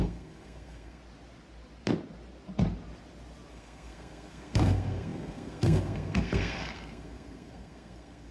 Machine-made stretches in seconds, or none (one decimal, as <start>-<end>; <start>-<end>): 0.0-1.0; 3.5-8.3